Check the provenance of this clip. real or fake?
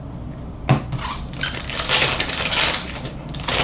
real